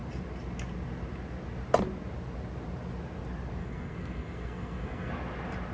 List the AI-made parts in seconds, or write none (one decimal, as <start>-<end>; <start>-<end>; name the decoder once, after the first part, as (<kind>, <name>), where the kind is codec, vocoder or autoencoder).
3.6-5.1 (codec, SNAC)